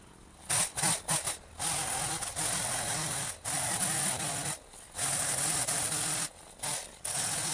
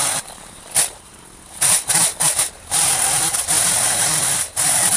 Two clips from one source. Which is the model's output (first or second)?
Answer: second